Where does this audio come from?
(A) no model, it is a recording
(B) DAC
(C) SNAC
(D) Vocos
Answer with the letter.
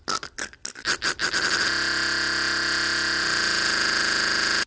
A